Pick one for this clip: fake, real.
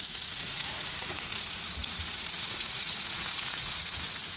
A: fake